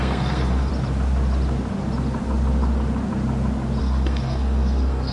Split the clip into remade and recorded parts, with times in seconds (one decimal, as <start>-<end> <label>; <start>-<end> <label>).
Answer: 0.0-0.7 remade; 0.7-3.8 recorded; 3.8-5.1 remade